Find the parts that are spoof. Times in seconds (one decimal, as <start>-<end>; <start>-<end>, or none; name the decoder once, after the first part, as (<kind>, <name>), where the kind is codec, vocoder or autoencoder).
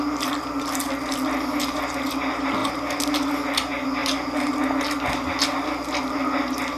none